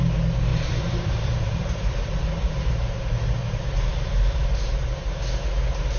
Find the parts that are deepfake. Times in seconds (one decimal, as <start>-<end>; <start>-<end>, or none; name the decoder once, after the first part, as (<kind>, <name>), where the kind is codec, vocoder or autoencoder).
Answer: 0.5-2.9 (vocoder, BigVGAN v2); 3.4-5.2